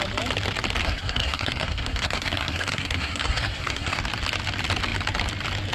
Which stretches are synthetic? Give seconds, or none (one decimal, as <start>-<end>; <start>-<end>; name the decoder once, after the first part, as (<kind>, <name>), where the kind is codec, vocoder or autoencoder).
0.8-4.0 (codec, SNAC)